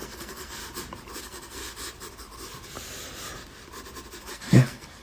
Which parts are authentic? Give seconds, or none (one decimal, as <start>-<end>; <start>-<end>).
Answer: 0.6-1.2; 1.6-4.2